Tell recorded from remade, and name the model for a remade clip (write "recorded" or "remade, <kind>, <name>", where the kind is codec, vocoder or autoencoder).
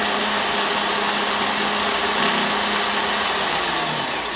recorded